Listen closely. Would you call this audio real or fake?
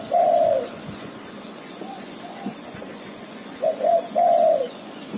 fake